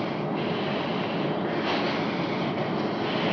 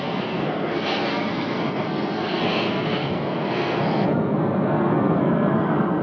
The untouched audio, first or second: first